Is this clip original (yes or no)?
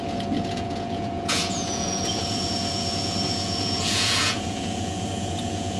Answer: no